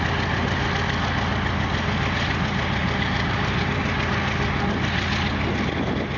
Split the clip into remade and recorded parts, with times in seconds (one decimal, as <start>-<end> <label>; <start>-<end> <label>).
0.0-2.8 recorded; 2.8-3.6 remade; 3.6-6.2 recorded